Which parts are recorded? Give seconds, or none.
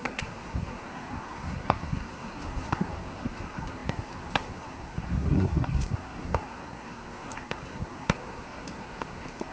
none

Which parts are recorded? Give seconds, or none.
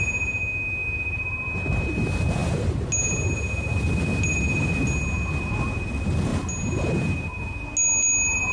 0.0-8.5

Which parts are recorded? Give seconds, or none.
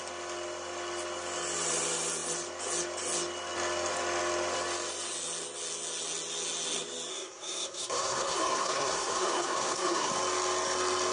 0.0-7.1; 10.1-11.1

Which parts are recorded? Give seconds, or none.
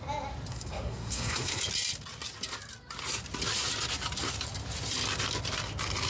0.0-0.5; 1.6-6.1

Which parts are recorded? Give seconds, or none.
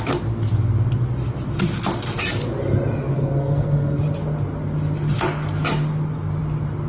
0.0-3.2; 4.0-6.9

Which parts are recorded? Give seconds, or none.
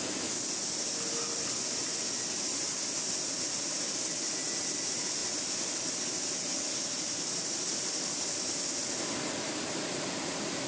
0.0-10.7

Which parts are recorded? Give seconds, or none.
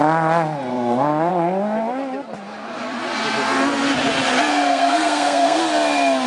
0.0-0.7; 1.3-4.5; 5.6-6.3